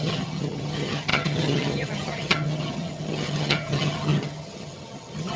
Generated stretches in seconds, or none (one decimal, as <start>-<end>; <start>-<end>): 0.0-5.4